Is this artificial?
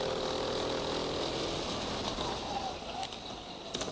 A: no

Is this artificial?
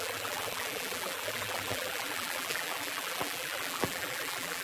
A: yes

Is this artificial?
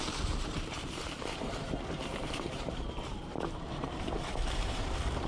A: yes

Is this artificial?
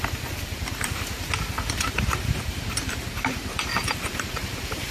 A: yes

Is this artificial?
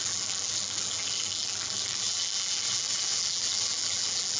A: yes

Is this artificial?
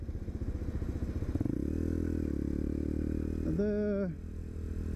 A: no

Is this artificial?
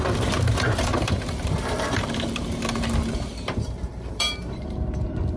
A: yes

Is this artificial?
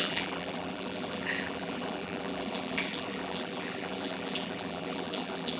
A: yes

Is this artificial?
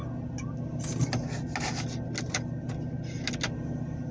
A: no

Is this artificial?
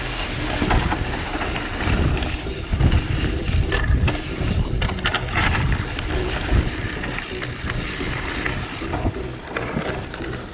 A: yes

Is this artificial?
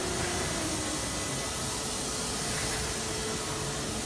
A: no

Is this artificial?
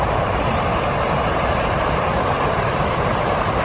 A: yes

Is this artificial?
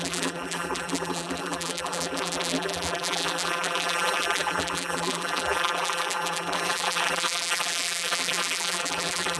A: yes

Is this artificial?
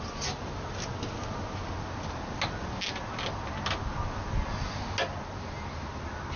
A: no